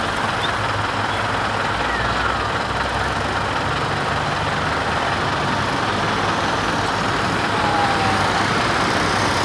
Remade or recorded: recorded